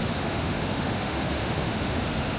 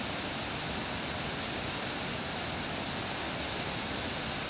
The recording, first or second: second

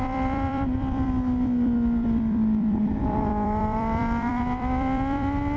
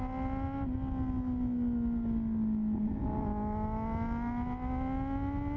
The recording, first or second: second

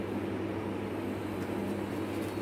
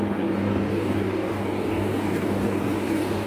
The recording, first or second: first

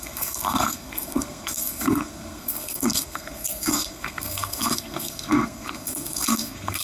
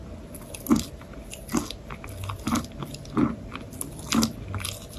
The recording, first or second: second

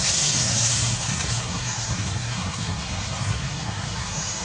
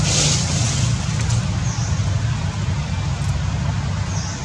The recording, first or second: second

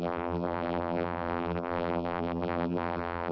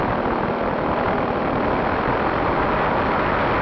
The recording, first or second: second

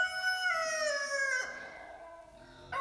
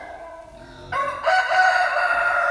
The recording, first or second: first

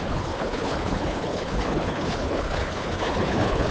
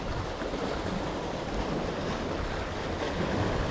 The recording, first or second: second